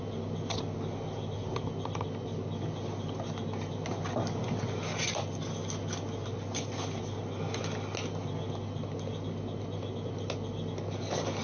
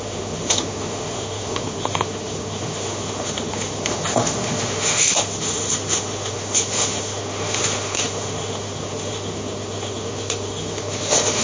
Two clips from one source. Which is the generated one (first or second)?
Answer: second